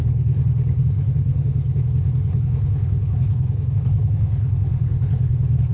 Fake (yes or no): yes